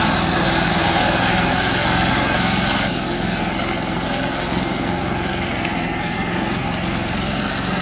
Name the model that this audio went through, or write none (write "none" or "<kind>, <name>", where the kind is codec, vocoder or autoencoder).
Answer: codec, SNAC